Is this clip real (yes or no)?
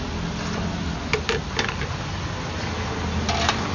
yes